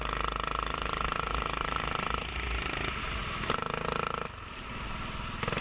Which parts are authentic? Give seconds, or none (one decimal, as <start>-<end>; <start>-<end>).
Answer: 0.0-5.6